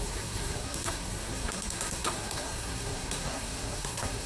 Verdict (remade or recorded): remade